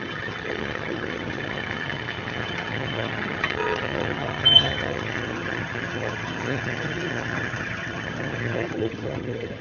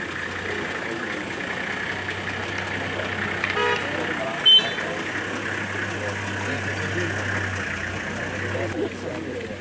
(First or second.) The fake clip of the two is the first